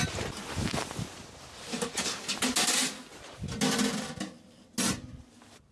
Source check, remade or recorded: recorded